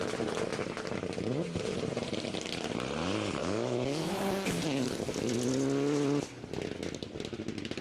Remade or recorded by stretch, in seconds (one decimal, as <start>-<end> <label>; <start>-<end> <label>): 0.0-3.4 recorded; 3.4-4.2 remade; 4.2-7.8 recorded